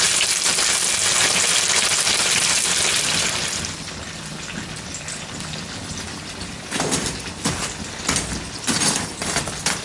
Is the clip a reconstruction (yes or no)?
no